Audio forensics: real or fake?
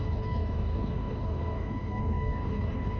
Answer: fake